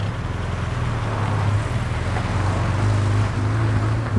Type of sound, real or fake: real